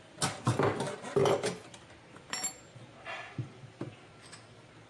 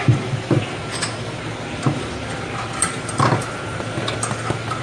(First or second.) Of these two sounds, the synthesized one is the second